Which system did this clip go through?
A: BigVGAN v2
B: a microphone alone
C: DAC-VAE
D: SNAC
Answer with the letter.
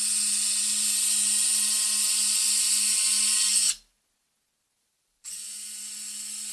B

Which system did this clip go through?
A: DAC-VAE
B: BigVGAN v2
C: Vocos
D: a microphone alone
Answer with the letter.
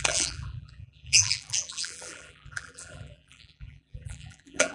B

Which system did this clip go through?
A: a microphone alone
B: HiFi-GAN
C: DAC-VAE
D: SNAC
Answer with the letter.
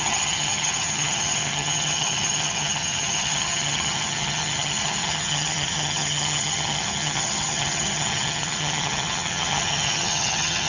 B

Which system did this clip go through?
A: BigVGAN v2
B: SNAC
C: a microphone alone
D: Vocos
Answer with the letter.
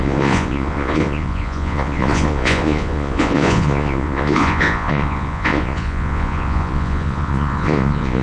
D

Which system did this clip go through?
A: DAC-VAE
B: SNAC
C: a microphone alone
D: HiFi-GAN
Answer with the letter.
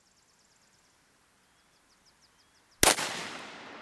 C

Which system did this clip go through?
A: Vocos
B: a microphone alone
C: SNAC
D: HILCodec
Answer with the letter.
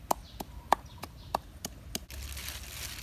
B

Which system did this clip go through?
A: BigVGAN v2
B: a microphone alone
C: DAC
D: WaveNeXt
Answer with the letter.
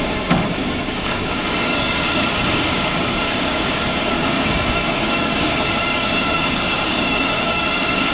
C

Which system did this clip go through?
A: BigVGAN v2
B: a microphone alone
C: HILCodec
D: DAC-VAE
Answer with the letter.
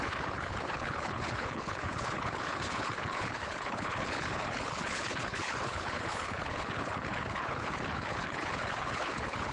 C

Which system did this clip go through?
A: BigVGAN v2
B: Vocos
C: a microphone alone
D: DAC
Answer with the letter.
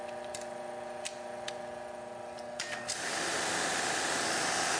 C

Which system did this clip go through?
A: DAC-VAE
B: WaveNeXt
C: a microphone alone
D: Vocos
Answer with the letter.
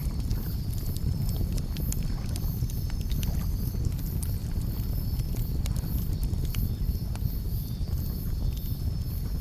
C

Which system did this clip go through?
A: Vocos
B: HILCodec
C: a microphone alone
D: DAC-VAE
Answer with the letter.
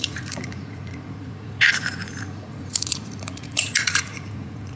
A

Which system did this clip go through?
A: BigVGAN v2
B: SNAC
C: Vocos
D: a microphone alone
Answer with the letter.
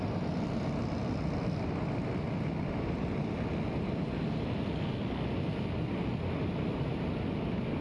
D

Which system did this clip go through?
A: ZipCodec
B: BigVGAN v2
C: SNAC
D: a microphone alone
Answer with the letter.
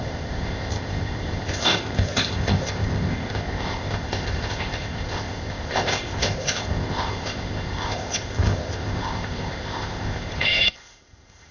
A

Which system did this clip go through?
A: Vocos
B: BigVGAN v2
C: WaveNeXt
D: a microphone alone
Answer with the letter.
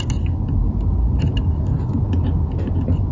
D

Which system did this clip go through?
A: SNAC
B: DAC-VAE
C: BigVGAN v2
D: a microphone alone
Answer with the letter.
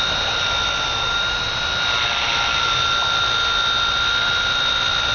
C